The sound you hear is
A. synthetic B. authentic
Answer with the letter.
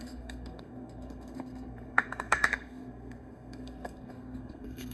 A